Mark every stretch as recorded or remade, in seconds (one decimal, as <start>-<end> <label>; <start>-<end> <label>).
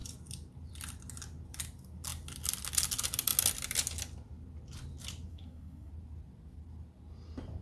0.0-5.3 recorded; 5.3-5.9 remade; 5.9-7.6 recorded